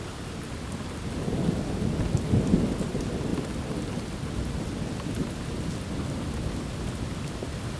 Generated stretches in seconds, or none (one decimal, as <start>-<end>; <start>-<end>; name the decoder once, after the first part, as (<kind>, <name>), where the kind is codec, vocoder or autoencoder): none

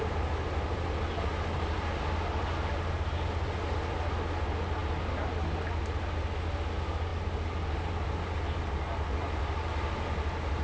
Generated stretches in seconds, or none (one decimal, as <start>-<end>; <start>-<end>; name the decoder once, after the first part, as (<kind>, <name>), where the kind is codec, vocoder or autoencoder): none

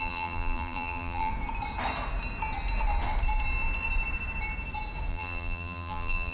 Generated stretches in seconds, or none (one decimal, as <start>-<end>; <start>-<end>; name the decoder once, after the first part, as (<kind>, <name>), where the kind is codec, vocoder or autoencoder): 0.0-1.3 (vocoder, BigVGAN v2); 5.1-6.3

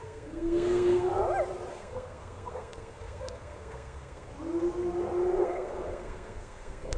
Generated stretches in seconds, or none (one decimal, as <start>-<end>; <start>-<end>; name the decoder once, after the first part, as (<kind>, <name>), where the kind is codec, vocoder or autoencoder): 0.0-1.1 (codec, SNAC); 1.7-4.3; 5.4-7.0

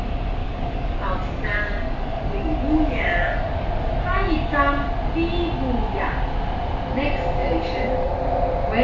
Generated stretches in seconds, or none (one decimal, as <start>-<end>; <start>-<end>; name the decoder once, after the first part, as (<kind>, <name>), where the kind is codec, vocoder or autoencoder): 0.4-4.6 (codec, DAC); 7.4-8.1

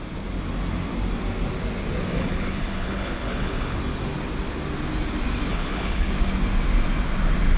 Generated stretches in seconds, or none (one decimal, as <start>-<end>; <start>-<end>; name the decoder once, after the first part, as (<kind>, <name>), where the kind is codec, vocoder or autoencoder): 2.1-3.8 (codec, HILCodec); 5.5-6.1